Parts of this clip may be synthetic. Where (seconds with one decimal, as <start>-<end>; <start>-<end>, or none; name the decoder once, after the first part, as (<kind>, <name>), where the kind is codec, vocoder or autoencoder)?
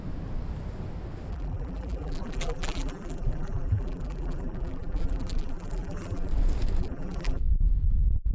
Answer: 1.3-6.3 (vocoder, BigVGAN v2); 6.8-7.4